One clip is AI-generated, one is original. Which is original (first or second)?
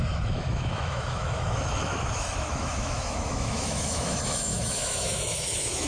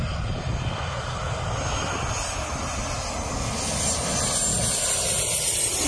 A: second